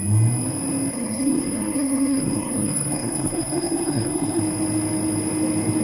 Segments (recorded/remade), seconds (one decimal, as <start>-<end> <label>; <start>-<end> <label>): 0.0-0.9 recorded; 0.9-4.4 remade; 4.4-5.8 recorded